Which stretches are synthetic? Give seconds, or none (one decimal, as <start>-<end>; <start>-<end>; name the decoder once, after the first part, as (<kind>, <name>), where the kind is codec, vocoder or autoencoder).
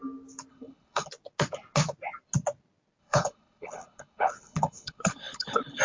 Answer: 0.5-1.1 (codec, HILCodec); 3.0-5.8